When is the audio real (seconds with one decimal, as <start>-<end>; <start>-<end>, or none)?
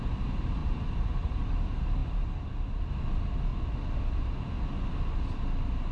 0.0-0.6; 1.5-2.0; 2.9-5.9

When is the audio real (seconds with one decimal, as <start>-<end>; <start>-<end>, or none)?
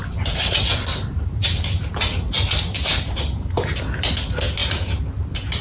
0.0-0.9; 2.0-2.7; 3.7-5.6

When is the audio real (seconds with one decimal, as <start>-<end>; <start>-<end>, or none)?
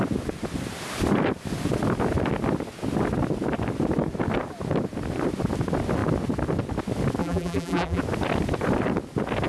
0.0-7.2; 8.0-9.5